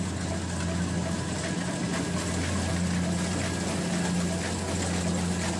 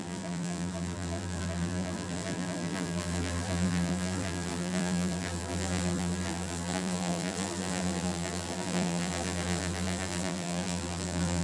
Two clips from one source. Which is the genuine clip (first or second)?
first